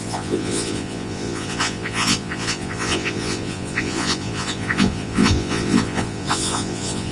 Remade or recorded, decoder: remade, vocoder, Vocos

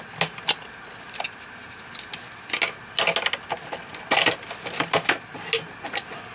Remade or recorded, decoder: recorded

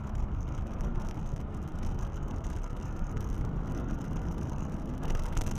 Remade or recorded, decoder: remade, codec, SNAC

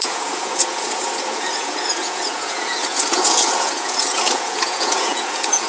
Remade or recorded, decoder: remade, vocoder, Vocos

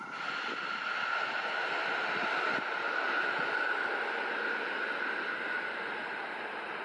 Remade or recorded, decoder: recorded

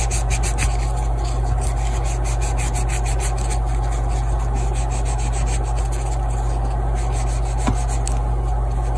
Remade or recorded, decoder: recorded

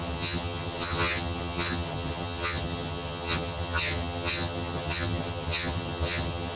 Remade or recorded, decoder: remade, vocoder, HiFi-GAN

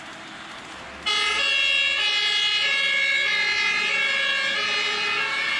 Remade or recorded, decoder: recorded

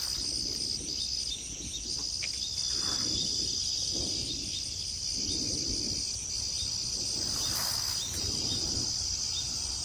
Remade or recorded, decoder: recorded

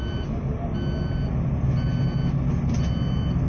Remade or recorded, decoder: recorded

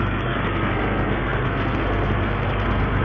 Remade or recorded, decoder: remade, codec, SNAC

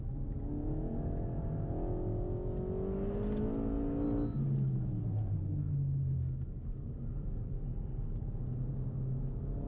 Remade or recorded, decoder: recorded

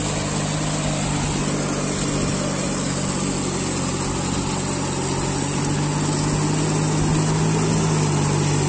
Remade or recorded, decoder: recorded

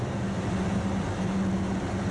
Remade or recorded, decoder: recorded